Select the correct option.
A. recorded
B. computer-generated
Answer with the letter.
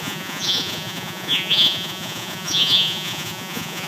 B